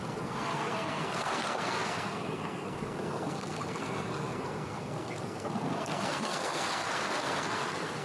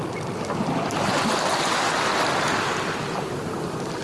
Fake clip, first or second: first